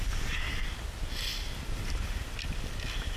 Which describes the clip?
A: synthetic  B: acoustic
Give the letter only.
B